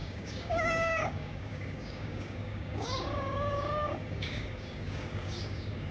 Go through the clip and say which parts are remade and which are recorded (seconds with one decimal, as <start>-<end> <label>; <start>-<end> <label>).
0.0-5.9 remade